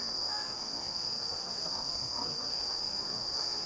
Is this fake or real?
fake